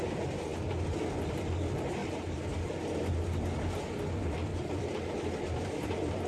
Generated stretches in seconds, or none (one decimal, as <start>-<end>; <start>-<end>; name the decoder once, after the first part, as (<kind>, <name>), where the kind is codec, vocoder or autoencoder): none